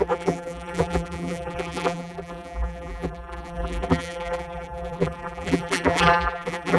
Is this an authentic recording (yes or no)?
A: no